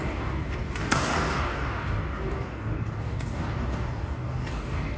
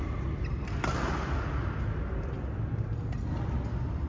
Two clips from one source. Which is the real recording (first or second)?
second